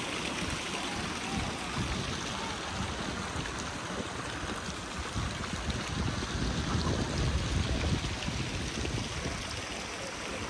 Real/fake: real